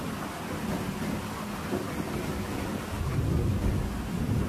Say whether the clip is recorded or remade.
recorded